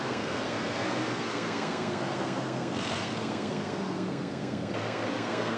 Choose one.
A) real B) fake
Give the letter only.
B